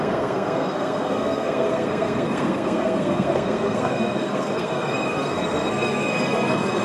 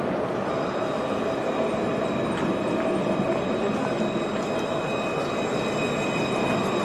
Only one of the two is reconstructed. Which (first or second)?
first